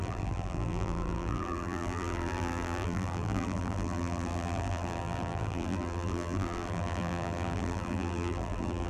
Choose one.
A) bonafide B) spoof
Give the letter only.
B